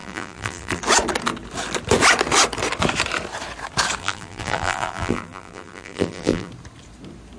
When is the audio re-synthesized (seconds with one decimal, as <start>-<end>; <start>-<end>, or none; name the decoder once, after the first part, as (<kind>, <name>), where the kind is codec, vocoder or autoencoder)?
0.0-0.8 (vocoder, BigVGAN v2); 4.0-6.5